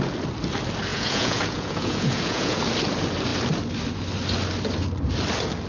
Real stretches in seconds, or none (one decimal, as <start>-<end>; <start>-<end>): 0.0-0.9; 2.6-5.7